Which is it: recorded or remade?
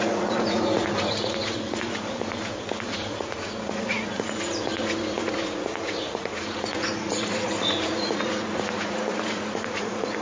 remade